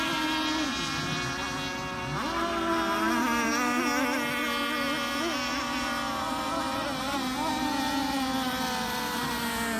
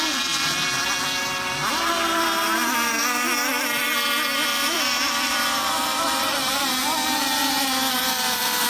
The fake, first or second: second